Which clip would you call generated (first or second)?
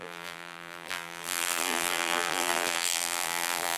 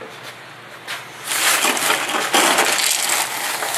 first